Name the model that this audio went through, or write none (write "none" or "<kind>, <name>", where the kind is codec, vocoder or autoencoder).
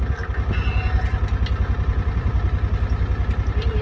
none